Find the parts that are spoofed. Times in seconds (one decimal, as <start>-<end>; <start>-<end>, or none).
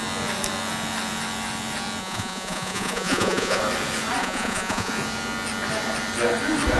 2.0-3.6; 4.2-4.9